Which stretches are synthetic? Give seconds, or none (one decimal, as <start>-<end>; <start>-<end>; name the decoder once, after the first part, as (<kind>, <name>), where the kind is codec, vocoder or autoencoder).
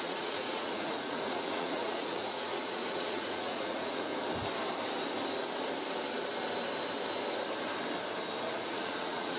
0.0-4.1 (vocoder, Vocos); 8.4-9.4